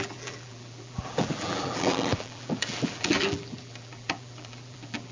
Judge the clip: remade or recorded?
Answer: remade